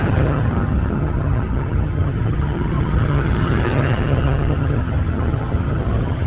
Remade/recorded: remade